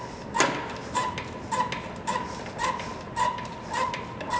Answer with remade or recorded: recorded